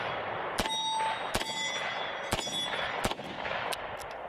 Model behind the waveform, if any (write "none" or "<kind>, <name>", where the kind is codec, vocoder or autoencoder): none